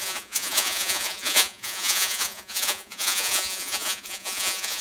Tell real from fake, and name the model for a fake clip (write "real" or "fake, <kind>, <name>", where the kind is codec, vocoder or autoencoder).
fake, vocoder, Vocos